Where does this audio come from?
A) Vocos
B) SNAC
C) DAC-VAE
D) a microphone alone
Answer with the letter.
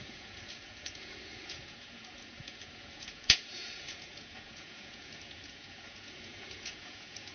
A